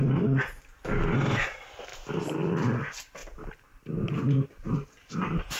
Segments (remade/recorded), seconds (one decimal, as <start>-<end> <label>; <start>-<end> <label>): 0.0-5.6 recorded